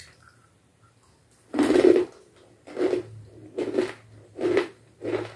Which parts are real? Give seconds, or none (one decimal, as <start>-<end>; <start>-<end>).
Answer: 0.0-5.4